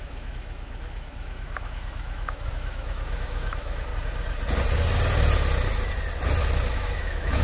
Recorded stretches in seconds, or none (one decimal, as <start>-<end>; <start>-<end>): 3.9-6.7